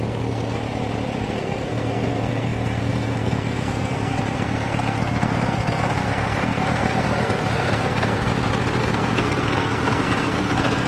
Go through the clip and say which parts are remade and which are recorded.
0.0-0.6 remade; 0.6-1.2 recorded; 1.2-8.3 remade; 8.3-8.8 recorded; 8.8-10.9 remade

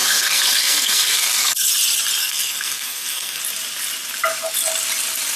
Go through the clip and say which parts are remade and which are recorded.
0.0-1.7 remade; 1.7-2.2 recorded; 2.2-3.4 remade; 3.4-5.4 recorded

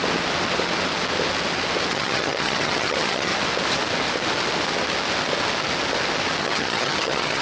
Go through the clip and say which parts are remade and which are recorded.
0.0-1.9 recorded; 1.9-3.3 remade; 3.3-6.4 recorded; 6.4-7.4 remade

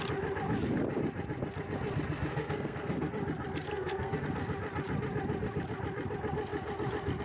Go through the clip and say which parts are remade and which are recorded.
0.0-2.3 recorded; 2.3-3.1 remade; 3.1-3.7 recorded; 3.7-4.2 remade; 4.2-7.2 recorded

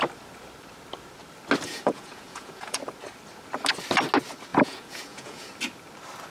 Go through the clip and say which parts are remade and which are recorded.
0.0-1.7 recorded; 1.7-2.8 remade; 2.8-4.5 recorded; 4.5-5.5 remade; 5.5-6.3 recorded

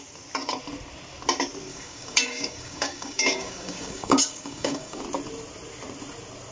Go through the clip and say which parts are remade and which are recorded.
0.0-1.7 recorded; 1.7-5.0 remade; 5.0-6.5 recorded

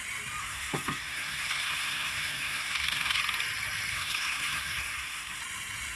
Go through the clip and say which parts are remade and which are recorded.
0.0-0.4 recorded; 0.4-3.2 remade; 3.2-3.9 recorded; 3.9-5.4 remade; 5.4-6.0 recorded

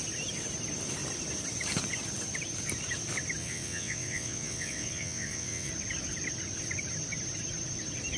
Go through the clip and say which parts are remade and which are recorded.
0.0-3.4 recorded; 3.4-5.7 remade; 5.7-8.2 recorded